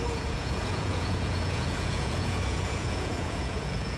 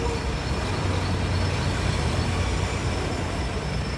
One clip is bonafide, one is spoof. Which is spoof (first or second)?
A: first